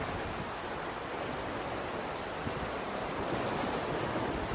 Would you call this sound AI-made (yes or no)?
no